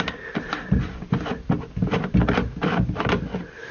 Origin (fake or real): real